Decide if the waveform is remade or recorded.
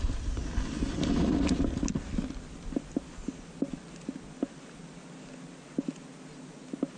recorded